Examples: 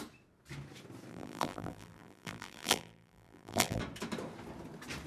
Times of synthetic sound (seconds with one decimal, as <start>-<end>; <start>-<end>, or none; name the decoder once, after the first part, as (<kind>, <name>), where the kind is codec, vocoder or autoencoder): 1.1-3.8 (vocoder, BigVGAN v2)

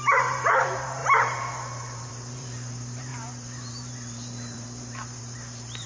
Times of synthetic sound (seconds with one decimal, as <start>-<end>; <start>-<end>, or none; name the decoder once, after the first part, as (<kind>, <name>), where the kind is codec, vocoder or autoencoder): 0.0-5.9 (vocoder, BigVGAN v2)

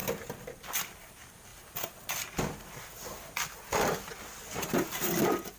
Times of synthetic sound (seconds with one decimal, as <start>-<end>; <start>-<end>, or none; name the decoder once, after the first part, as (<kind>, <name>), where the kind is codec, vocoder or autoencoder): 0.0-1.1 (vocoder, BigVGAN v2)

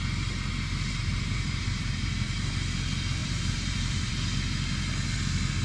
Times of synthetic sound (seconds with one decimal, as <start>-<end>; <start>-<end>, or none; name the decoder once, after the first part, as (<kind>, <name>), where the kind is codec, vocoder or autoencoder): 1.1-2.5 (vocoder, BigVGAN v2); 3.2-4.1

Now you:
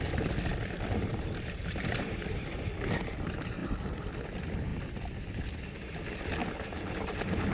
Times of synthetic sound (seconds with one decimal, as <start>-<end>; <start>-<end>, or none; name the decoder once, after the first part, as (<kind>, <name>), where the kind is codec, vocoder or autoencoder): 1.1-2.7 (vocoder, BigVGAN v2)